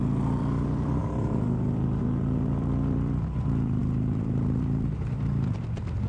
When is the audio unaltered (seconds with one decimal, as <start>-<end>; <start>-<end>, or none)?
none